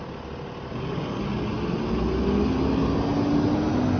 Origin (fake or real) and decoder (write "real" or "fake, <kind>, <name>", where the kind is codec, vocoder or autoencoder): real